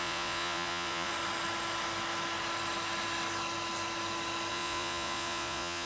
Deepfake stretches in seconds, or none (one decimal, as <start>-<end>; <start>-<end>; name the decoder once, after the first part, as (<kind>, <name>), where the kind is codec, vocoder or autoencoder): 0.0-1.1 (vocoder, Vocos); 4.5-5.9